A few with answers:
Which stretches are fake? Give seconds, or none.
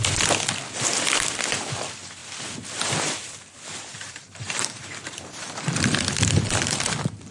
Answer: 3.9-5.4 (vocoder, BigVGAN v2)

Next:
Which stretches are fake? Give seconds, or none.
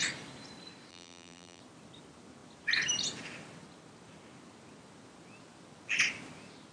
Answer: 0.9-1.6 (vocoder, BigVGAN v2)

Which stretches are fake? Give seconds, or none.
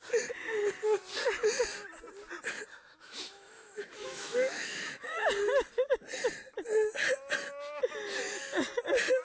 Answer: 2.7-5.3 (autoencoder, DAC-VAE)